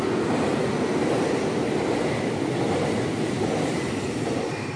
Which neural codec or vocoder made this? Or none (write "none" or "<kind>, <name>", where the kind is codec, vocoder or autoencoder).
none